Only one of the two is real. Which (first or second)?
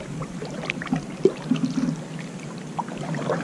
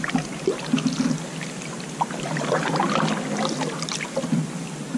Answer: second